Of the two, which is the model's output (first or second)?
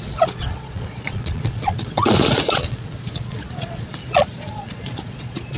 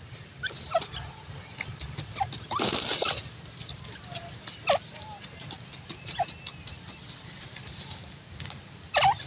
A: first